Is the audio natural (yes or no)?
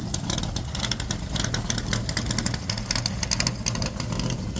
yes